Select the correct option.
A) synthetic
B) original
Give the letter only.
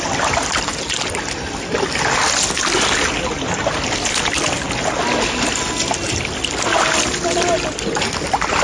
B